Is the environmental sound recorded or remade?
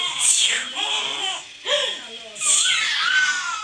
recorded